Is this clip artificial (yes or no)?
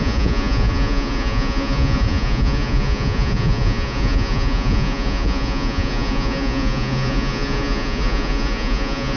yes